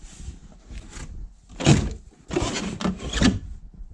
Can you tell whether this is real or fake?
real